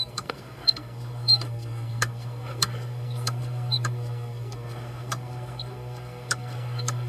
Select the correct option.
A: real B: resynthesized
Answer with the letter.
B